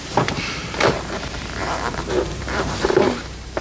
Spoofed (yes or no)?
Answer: yes